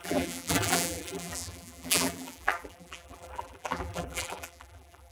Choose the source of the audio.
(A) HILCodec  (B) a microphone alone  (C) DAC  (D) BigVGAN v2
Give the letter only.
D